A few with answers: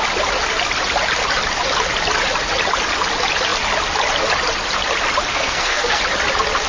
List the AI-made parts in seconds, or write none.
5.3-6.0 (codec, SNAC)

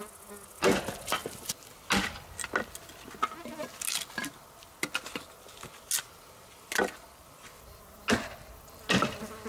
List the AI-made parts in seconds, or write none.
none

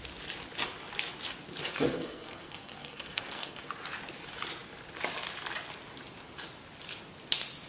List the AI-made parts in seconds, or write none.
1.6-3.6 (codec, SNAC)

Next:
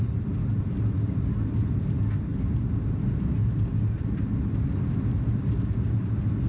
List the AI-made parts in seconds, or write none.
none

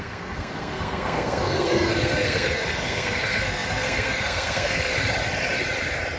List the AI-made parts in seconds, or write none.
0.0-4.9 (codec, SNAC)

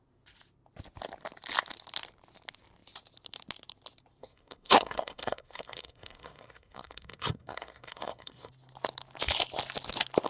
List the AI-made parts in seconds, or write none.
4.2-8.5 (codec, SNAC)

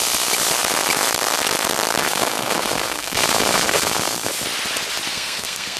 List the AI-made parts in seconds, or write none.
2.0-4.3 (codec, SNAC); 5.1-5.8

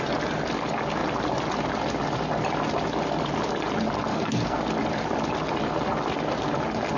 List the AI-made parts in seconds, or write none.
4.1-4.6 (codec, SNAC)